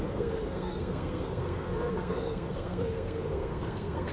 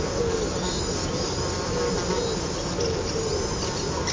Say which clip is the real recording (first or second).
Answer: second